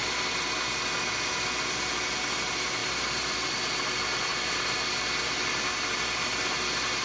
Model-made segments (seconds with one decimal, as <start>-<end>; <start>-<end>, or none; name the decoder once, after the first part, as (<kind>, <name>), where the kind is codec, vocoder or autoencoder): 2.8-3.5 (vocoder, BigVGAN v2)